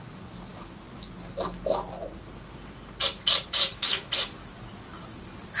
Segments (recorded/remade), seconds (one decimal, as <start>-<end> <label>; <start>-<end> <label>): 0.0-3.7 recorded; 3.7-4.3 remade; 4.3-5.6 recorded